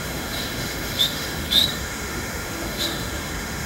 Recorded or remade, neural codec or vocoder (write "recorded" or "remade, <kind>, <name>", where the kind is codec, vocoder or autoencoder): remade, autoencoder, DAC-VAE